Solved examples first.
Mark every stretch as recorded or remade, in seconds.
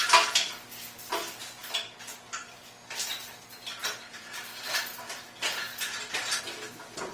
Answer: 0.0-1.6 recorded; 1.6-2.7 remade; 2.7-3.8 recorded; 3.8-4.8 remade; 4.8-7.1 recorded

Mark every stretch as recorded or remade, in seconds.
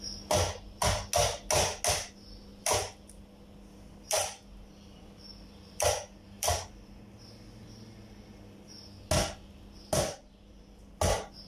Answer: 0.0-2.5 recorded; 2.5-6.9 remade; 6.9-11.5 recorded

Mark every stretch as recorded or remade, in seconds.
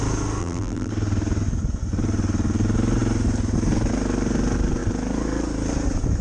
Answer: 0.0-0.4 recorded; 0.4-0.9 remade; 0.9-6.2 recorded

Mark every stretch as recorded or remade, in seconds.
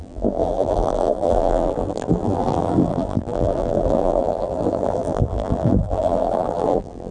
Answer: 0.0-7.1 remade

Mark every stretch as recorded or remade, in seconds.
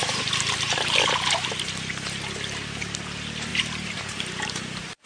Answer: 0.0-1.1 remade; 1.1-3.5 recorded; 3.5-5.1 remade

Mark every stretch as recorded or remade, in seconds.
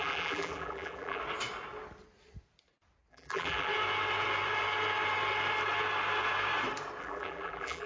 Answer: 0.0-1.2 remade; 1.2-3.1 recorded; 3.1-3.7 remade; 3.7-7.0 recorded; 7.0-7.9 remade